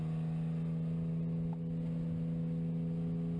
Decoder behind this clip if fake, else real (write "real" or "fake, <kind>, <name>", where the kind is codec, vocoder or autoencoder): real